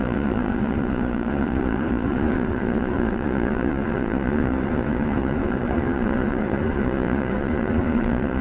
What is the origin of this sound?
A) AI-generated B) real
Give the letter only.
A